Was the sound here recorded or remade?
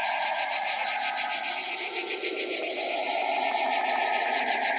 recorded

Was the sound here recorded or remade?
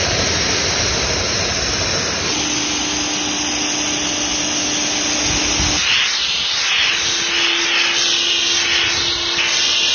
recorded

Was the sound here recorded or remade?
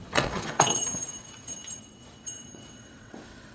remade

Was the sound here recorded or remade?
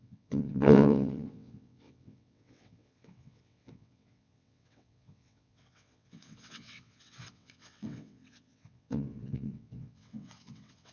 remade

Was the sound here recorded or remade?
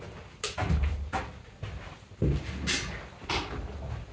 recorded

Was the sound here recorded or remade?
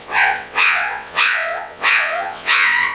remade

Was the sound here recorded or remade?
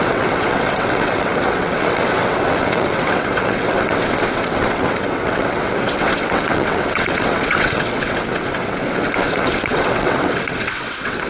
remade